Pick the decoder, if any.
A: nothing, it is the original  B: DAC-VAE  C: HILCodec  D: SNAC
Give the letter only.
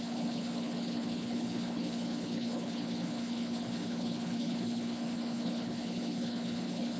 C